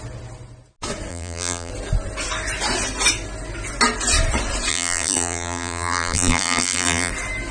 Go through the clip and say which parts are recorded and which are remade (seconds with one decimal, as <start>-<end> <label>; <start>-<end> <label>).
0.0-1.1 recorded; 1.1-1.7 remade; 1.7-4.7 recorded; 4.7-7.1 remade; 7.1-7.5 recorded